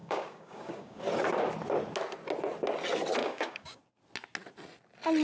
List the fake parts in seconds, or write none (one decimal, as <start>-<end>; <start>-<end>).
0.0-1.0; 3.2-3.8